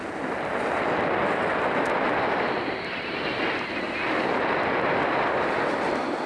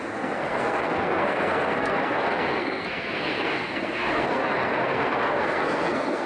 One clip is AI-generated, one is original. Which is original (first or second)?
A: first